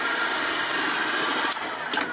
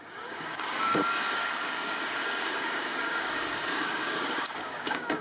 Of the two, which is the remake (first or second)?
second